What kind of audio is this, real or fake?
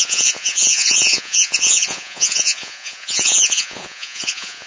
fake